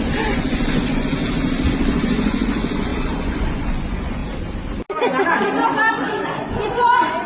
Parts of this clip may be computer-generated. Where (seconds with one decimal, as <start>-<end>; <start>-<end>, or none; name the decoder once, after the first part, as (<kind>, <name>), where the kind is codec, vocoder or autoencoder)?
0.0-1.2 (vocoder, Vocos); 1.7-4.2; 5.9-7.3